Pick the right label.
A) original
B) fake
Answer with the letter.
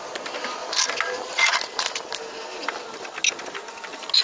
A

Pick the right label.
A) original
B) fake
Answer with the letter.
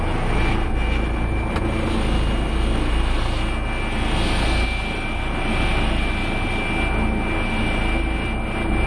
A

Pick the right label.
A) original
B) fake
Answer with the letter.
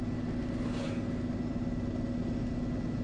A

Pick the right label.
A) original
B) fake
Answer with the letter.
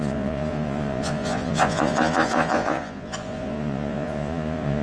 B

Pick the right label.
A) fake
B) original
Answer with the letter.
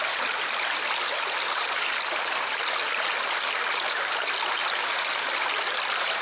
B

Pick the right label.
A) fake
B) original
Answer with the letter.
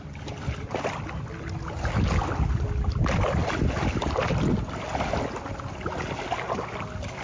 B